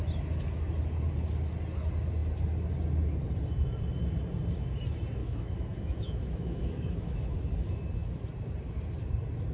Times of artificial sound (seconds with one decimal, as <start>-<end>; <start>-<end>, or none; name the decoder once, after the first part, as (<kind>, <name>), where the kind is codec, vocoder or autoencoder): 5.2-7.4 (autoencoder, DAC-VAE)